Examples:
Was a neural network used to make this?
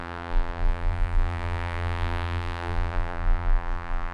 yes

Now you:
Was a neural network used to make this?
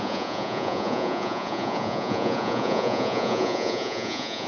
yes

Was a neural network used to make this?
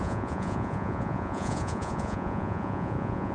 yes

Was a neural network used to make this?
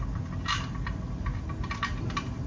no